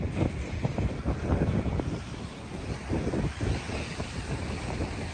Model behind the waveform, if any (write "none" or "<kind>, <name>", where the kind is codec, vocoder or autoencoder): none